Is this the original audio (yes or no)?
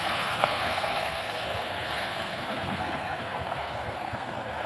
no